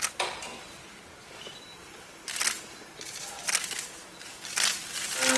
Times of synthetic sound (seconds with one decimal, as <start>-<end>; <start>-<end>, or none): none